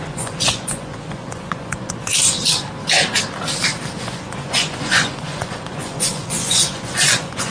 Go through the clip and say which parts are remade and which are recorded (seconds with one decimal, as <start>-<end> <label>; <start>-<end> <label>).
0.0-2.1 remade; 2.1-4.0 recorded; 4.0-7.5 remade